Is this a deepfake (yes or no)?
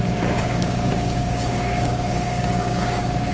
yes